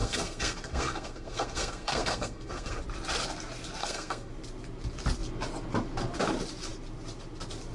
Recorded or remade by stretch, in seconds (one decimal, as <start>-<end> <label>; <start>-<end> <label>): 0.0-2.8 remade; 2.8-3.8 recorded; 3.8-4.3 remade; 4.3-7.7 recorded